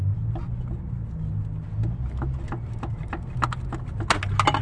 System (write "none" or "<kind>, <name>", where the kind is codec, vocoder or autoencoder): none